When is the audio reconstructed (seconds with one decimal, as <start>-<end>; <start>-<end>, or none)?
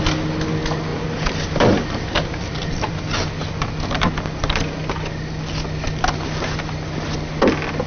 0.9-3.3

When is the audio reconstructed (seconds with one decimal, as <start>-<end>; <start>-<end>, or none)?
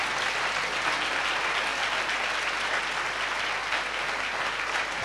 none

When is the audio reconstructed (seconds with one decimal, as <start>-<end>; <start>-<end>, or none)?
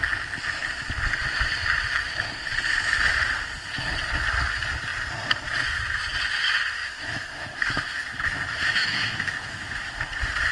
6.8-9.9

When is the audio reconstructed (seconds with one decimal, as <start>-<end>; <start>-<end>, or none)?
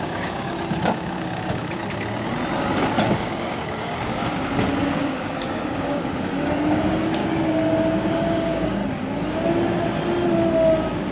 0.0-1.8; 2.9-4.3; 4.8-7.2; 8.1-8.8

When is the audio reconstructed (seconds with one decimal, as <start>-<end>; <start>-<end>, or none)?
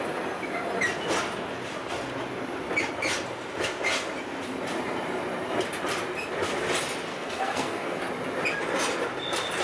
7.1-8.0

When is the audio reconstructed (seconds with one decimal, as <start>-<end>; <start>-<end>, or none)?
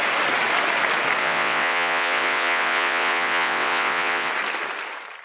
1.2-4.3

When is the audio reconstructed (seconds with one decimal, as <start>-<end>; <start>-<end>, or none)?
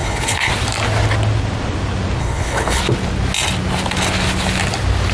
0.0-0.5; 2.2-2.8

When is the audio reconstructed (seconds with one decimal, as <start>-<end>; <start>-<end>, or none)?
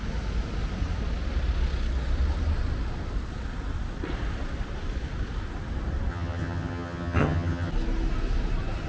6.1-7.7